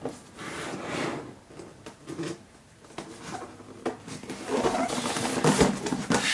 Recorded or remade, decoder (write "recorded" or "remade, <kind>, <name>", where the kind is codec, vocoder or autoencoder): recorded